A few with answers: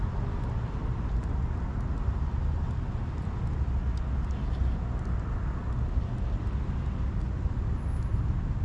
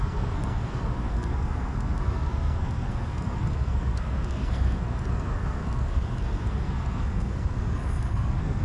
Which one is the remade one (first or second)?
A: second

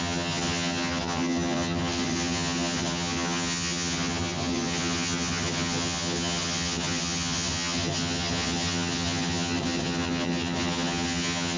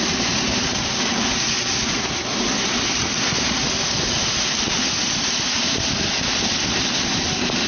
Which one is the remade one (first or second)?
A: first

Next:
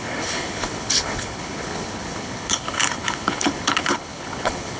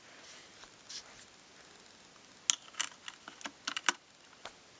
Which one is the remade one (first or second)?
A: first